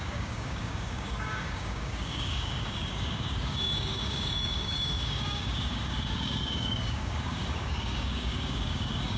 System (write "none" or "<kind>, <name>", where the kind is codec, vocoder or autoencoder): codec, DAC